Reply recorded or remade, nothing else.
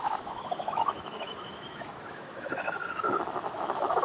remade